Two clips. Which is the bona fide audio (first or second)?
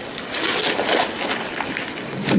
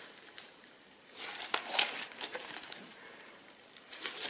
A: first